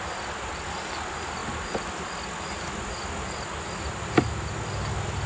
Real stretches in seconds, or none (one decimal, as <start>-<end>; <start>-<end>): 0.0-5.3